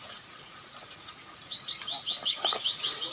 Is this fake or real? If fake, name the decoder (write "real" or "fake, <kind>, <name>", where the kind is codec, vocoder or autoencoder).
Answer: fake, vocoder, Vocos